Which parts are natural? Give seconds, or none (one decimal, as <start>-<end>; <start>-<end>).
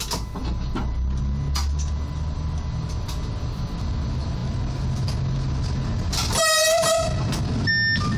0.0-8.2